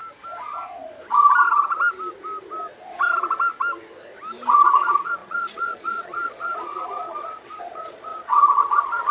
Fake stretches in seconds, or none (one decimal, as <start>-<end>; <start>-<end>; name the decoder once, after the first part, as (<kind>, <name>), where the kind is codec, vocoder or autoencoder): 4.5-9.1 (vocoder, Vocos)